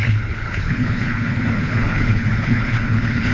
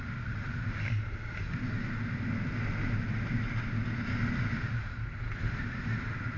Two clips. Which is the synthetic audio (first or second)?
first